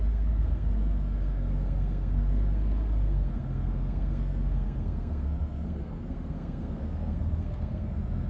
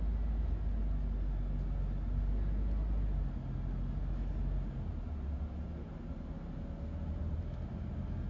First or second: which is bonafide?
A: second